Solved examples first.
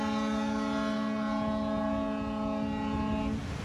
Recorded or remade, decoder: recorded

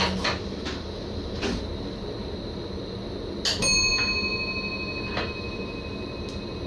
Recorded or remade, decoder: recorded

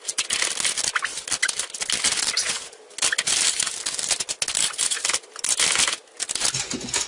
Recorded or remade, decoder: recorded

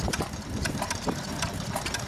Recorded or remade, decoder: remade, vocoder, BigVGAN v2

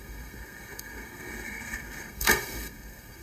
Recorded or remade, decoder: remade, codec, SNAC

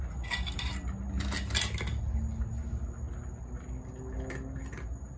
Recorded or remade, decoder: recorded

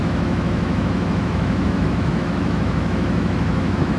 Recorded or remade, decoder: remade, autoencoder, DAC-VAE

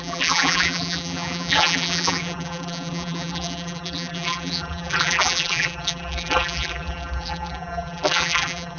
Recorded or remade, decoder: remade, vocoder, BigVGAN v2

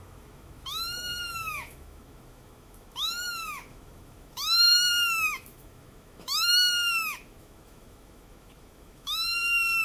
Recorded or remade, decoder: remade, autoencoder, DAC-VAE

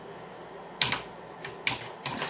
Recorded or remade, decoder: recorded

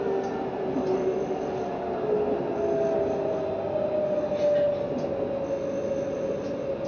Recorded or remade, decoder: recorded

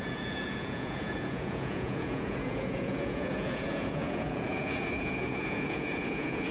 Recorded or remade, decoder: remade, vocoder, Vocos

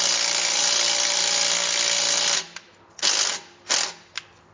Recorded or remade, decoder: recorded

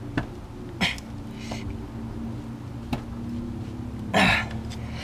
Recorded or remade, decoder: recorded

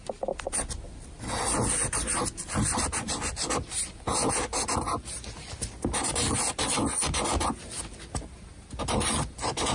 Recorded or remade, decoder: recorded